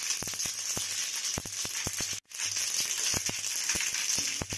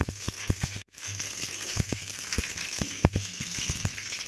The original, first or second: first